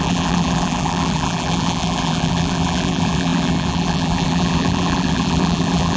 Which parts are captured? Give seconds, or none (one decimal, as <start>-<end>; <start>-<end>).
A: none

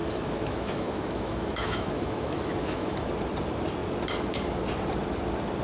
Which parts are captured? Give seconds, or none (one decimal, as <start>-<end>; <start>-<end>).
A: 3.1-5.6

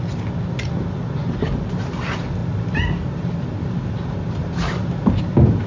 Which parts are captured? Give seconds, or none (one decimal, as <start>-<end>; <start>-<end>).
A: 0.0-5.7

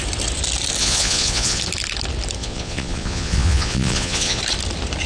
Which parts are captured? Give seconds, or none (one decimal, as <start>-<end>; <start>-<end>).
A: 0.0-0.8; 1.6-2.4; 4.4-5.1

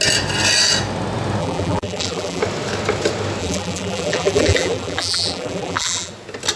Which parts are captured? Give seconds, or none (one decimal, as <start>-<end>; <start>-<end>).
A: 0.0-1.4; 2.4-3.4; 6.1-6.6

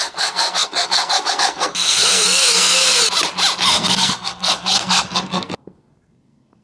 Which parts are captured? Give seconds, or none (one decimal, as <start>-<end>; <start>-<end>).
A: 3.0-3.6